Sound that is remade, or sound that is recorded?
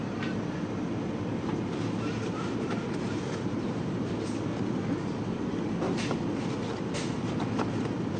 recorded